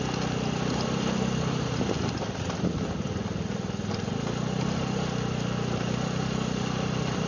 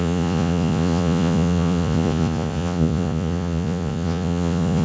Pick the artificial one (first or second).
second